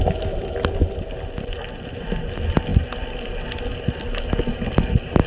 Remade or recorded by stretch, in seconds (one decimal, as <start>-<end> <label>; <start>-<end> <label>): 0.0-5.3 recorded